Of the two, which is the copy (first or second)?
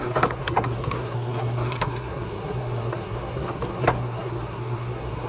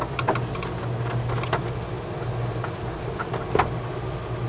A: first